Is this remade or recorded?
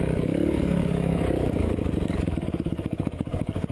remade